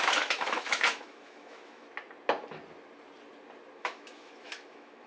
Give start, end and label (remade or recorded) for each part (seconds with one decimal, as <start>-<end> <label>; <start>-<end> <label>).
0.0-1.9 remade; 1.9-3.8 recorded; 3.8-5.1 remade